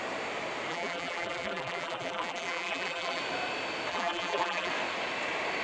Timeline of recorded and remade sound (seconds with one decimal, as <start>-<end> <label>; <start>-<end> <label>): 0.0-0.7 recorded; 0.7-3.2 remade; 3.2-3.9 recorded; 3.9-4.7 remade; 4.7-5.6 recorded